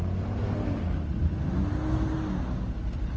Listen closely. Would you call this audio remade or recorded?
recorded